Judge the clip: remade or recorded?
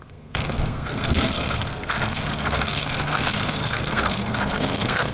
remade